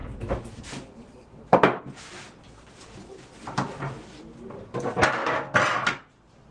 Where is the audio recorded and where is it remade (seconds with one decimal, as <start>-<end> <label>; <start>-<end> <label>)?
0.0-1.8 remade; 1.8-6.5 recorded